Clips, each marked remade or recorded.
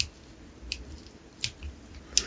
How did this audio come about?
recorded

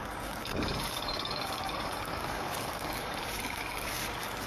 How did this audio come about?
remade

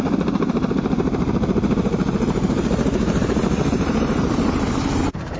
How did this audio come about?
remade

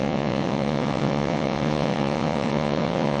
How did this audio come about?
remade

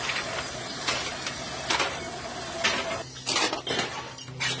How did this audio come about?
recorded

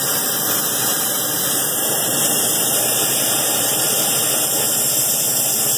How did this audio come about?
remade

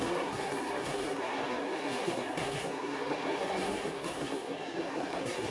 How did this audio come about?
remade